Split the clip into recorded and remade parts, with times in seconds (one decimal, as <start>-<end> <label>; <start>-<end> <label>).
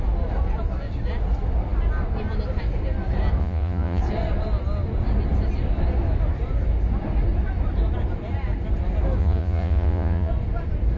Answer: 0.0-3.4 recorded; 3.4-4.0 remade; 4.0-9.2 recorded; 9.2-10.3 remade; 10.3-11.0 recorded